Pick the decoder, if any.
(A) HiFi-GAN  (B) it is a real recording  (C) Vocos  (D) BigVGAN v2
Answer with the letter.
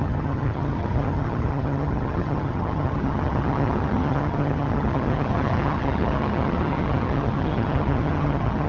A